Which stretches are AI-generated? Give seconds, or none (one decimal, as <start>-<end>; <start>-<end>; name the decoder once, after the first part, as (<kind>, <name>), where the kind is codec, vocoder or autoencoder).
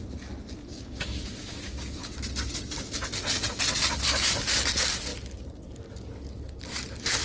0.7-2.1 (codec, DAC)